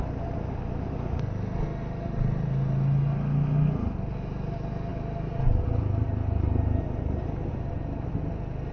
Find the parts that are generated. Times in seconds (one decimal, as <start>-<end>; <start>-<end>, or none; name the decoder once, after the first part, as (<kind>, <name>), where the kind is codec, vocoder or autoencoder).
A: none